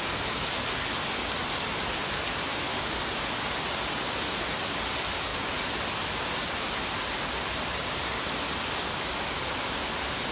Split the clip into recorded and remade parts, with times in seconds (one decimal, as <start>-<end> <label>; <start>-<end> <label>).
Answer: 0.0-2.5 recorded; 2.5-3.0 remade; 3.0-10.3 recorded